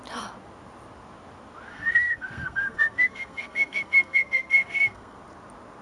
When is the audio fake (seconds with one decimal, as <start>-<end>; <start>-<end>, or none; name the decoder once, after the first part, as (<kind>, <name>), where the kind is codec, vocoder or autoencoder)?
1.7-5.2 (codec, SNAC)